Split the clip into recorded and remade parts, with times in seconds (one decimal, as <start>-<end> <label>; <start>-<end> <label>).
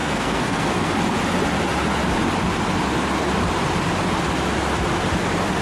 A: 0.0-0.9 remade; 0.9-5.6 recorded